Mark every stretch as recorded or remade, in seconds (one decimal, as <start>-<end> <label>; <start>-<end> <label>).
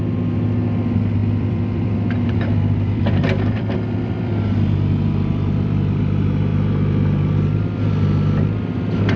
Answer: 0.0-1.2 recorded; 1.2-6.0 remade; 6.0-6.5 recorded; 6.5-7.8 remade; 7.8-9.2 recorded